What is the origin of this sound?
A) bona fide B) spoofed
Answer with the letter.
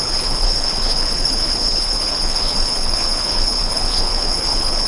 B